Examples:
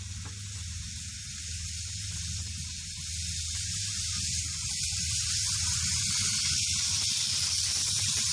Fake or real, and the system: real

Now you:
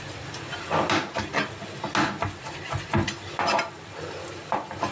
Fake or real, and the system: real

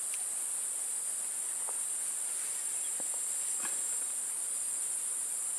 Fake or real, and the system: real